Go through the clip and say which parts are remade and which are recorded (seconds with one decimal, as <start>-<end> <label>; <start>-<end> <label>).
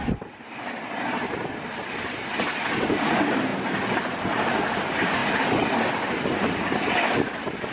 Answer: 0.0-7.7 recorded